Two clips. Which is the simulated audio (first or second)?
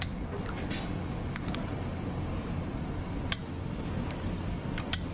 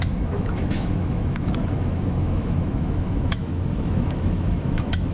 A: second